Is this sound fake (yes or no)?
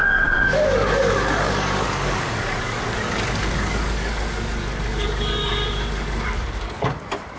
yes